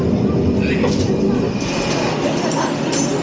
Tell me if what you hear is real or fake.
real